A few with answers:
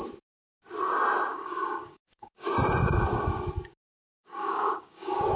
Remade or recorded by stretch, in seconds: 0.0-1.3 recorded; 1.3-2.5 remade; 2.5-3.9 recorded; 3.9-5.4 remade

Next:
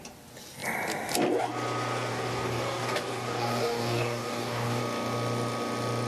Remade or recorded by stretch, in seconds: 0.0-2.1 recorded; 2.1-4.8 remade; 4.8-6.1 recorded

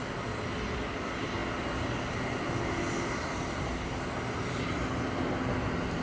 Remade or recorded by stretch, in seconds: 0.0-6.0 recorded